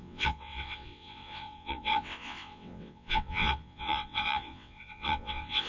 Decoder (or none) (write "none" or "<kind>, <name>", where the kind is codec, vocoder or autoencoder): vocoder, WaveNeXt